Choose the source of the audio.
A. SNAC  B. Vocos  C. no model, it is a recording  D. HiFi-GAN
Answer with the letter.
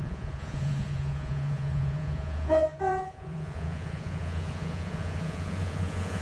B